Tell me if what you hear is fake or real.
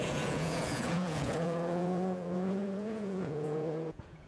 fake